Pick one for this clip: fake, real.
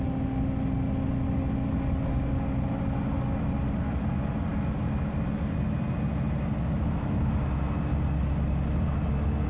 real